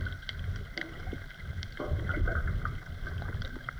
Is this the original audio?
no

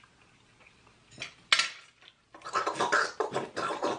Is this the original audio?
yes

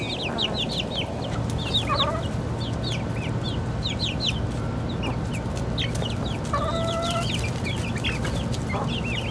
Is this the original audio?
yes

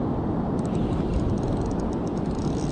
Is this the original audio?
no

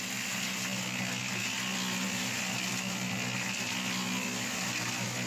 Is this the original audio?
yes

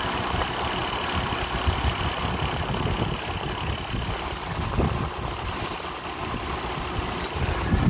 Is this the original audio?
yes